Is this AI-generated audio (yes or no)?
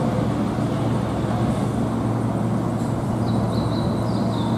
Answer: no